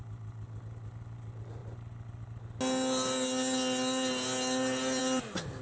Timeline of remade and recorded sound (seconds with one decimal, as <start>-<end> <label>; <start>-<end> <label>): 0.0-5.6 recorded